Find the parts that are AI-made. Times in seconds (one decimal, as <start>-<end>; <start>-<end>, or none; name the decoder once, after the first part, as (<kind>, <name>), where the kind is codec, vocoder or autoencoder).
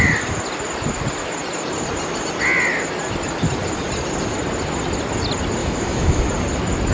5.6-6.2 (autoencoder, DAC-VAE)